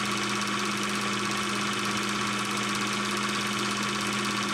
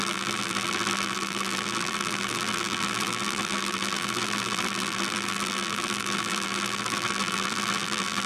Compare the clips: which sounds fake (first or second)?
second